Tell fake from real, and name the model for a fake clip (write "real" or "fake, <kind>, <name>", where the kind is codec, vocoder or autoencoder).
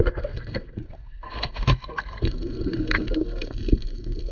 fake, codec, SNAC